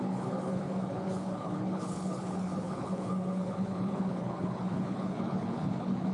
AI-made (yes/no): yes